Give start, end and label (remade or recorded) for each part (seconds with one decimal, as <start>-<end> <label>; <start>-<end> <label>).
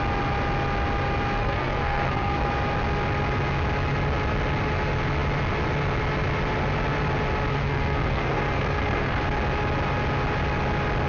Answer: 0.0-1.4 recorded; 1.4-2.5 remade; 2.5-7.5 recorded; 7.5-9.2 remade; 9.2-11.1 recorded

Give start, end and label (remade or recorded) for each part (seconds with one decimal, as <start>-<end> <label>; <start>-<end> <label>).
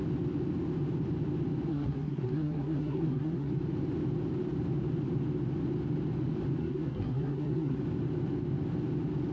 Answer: 0.0-1.7 recorded; 1.7-3.5 remade; 3.5-6.6 recorded; 6.6-7.8 remade; 7.8-9.3 recorded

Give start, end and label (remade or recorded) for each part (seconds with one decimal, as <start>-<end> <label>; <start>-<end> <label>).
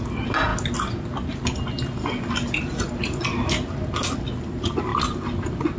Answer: 0.0-5.8 recorded